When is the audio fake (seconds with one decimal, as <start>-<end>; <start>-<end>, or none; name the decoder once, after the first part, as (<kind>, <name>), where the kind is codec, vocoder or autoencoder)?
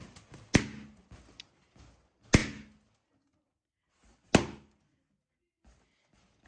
none